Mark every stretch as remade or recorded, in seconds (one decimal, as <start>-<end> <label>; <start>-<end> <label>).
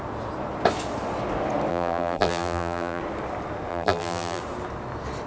0.0-1.7 recorded; 1.7-3.0 remade; 3.0-3.7 recorded; 3.7-4.4 remade; 4.4-5.3 recorded